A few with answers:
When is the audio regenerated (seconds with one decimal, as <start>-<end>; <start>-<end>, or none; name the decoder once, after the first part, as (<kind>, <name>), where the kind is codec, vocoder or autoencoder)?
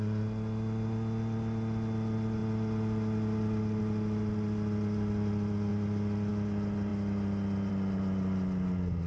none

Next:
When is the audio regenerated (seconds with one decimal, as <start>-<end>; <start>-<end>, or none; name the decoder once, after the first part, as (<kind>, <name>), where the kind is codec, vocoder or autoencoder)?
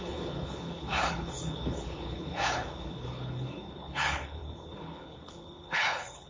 0.0-6.3 (codec, HILCodec)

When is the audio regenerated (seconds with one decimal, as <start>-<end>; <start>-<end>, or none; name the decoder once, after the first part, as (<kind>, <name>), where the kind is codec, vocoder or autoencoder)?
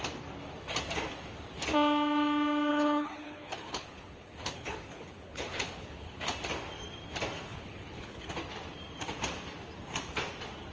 2.7-6.2 (codec, HILCodec); 7.5-8.3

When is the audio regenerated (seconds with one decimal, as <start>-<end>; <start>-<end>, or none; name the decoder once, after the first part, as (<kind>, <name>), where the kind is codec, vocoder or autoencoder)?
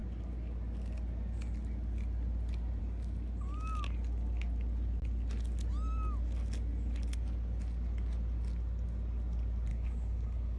9.7-10.6 (codec, HILCodec)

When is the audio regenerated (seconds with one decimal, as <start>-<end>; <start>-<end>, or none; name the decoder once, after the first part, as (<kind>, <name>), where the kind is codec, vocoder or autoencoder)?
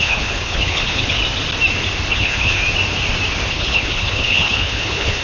0.0-1.2 (codec, HILCodec); 2.1-2.6; 3.5-5.2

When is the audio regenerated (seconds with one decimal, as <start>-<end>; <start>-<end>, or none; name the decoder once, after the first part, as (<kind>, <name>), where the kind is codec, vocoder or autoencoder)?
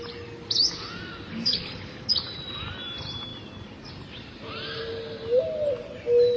1.3-2.1 (codec, HILCodec)